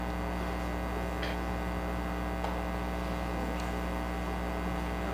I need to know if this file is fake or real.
real